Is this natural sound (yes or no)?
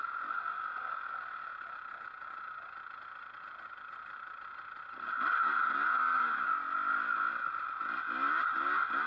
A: yes